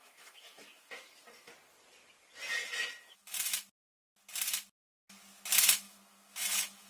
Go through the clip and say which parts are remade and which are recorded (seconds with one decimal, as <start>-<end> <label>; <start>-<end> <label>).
0.0-1.5 remade; 1.5-3.0 recorded; 3.0-3.5 remade; 3.5-5.6 recorded; 5.6-6.9 remade